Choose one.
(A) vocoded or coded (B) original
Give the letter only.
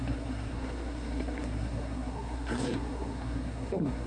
A